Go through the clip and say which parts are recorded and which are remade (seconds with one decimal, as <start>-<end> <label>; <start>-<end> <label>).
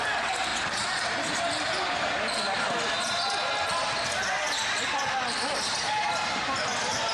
0.0-0.5 recorded; 0.5-1.1 remade; 1.1-7.1 recorded